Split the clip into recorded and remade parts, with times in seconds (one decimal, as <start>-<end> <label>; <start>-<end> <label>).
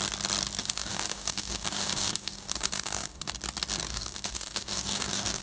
0.0-0.6 recorded; 0.6-3.3 remade; 3.3-3.9 recorded; 3.9-5.4 remade